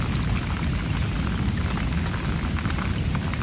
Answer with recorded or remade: recorded